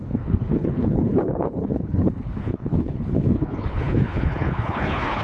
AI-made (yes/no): yes